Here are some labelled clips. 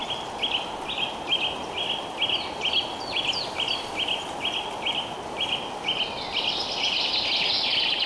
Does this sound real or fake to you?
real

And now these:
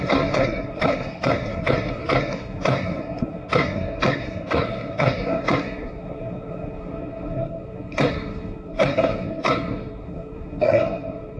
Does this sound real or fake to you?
fake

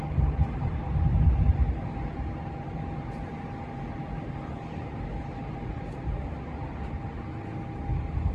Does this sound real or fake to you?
real